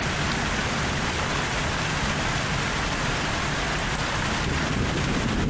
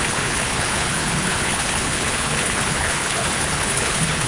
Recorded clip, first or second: first